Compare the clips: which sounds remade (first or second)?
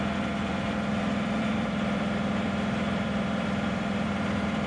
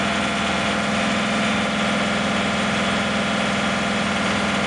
first